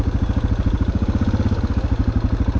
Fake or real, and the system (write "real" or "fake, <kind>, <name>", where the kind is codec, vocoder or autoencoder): real